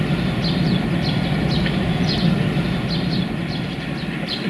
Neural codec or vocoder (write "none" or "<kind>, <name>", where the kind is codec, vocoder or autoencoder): none